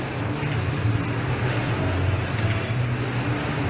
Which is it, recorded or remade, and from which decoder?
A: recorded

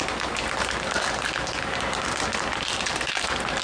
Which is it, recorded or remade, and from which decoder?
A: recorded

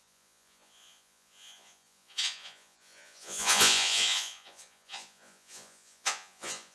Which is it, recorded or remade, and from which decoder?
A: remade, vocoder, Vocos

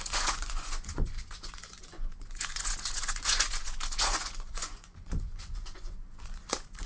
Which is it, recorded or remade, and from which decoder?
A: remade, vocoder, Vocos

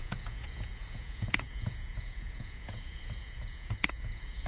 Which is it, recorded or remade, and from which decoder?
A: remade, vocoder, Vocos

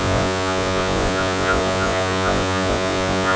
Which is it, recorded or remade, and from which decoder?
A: remade, vocoder, Vocos